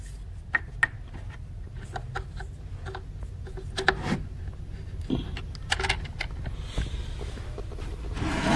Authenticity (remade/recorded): recorded